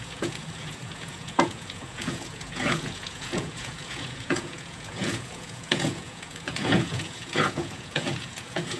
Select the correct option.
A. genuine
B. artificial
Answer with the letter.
B